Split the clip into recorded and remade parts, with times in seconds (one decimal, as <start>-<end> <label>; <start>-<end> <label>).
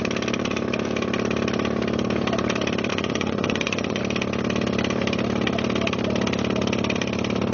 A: 0.0-2.9 recorded; 2.9-4.0 remade; 4.0-7.5 recorded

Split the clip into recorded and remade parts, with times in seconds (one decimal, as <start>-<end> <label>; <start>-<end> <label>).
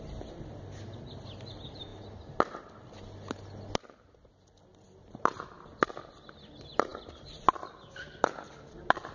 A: 0.0-1.9 remade; 1.9-4.3 recorded; 4.3-9.1 remade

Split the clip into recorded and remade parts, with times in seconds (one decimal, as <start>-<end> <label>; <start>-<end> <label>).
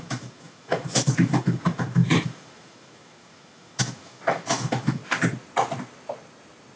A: 0.0-5.0 remade; 5.0-6.8 recorded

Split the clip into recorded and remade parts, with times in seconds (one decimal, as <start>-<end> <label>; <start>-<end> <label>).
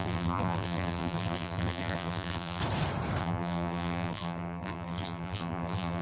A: 0.0-2.6 remade; 2.6-3.2 recorded; 3.2-6.0 remade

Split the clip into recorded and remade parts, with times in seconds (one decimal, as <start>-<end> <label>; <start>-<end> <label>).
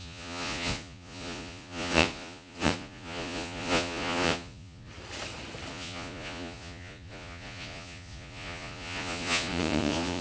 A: 0.0-4.9 remade; 4.9-5.7 recorded; 5.7-10.2 remade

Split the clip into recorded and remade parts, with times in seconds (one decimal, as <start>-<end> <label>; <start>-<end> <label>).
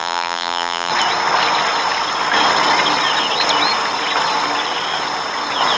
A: 0.0-0.9 remade; 0.9-5.8 recorded